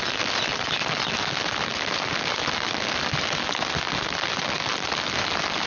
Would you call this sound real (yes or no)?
yes